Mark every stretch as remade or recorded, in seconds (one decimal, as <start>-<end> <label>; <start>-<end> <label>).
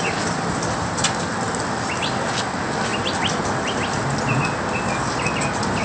0.0-5.8 recorded